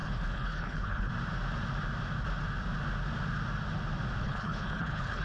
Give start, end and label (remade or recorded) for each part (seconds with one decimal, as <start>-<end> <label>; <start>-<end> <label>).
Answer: 0.0-1.1 remade; 1.1-4.2 recorded; 4.2-5.2 remade